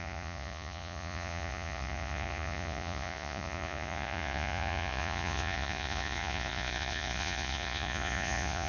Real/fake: fake